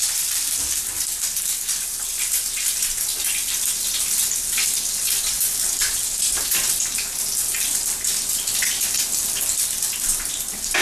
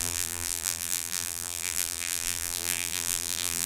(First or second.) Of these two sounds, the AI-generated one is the second